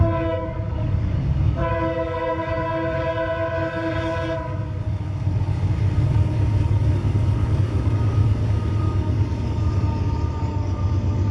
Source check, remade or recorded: remade